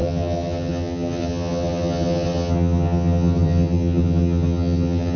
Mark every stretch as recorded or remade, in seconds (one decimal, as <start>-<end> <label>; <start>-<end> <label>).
0.0-5.2 remade